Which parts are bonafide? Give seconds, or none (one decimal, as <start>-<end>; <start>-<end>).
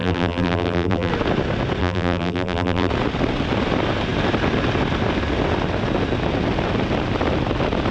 1.1-1.8; 2.9-7.9